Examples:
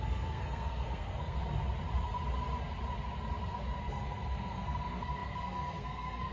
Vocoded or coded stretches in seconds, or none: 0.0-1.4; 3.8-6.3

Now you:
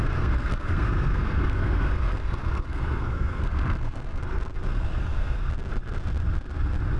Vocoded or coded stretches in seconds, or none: 0.0-4.2; 4.7-5.5

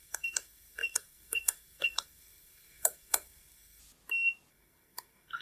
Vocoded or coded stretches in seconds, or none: 0.0-3.8; 4.5-5.4

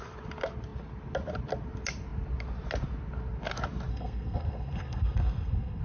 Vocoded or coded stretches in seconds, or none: 3.9-5.8

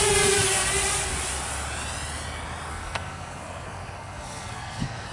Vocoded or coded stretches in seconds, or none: 2.7-5.1

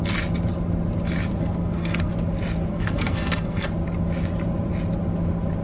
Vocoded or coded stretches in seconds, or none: 1.4-2.1; 2.7-3.7

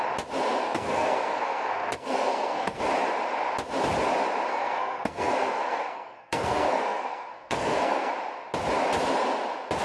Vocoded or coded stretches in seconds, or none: 0.6-2.8; 4.5-8.1